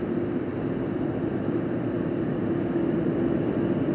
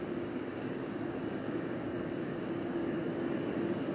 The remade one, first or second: second